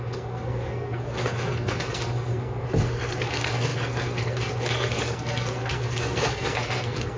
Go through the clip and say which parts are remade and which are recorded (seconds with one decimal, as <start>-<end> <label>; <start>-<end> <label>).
0.0-7.2 remade